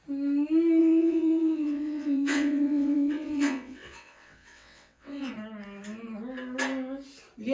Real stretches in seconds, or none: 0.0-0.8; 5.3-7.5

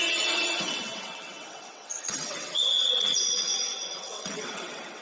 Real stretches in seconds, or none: none